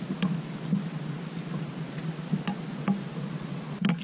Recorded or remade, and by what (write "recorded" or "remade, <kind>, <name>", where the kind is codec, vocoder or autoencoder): recorded